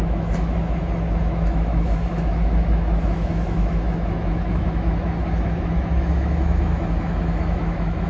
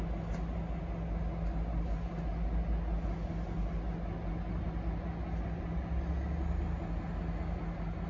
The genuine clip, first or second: second